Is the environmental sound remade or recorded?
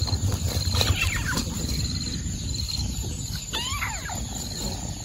recorded